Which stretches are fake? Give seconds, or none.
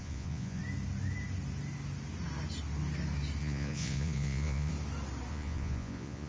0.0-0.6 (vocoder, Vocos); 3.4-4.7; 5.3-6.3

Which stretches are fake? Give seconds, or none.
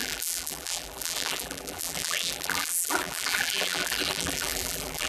0.0-5.1 (vocoder, BigVGAN v2)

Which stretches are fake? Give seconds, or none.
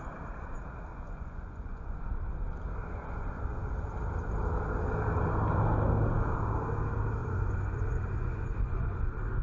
0.9-2.0 (vocoder, Vocos); 2.8-3.7; 7.2-9.0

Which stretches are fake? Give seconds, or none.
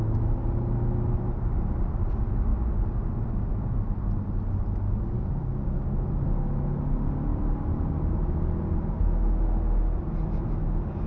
none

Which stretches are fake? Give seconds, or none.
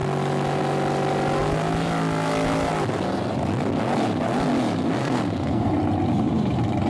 5.0-5.7 (codec, SNAC)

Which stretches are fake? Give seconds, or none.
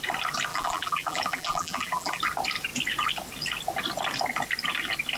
0.5-2.2 (vocoder, BigVGAN v2)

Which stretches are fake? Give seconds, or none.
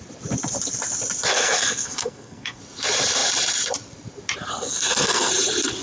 1.3-2.6 (codec, SNAC); 4.5-5.3